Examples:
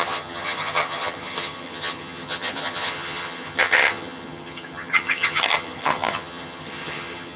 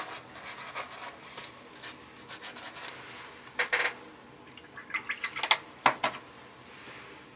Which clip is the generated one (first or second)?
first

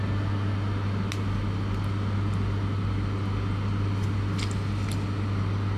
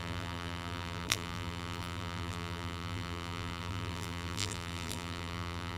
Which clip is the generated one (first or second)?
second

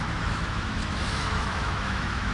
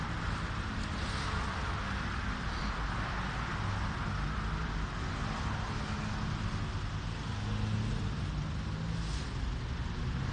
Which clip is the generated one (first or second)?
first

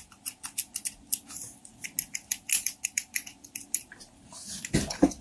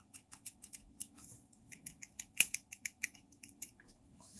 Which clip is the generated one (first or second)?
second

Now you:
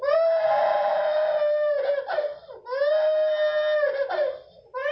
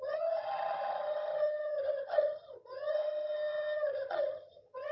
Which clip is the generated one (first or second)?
second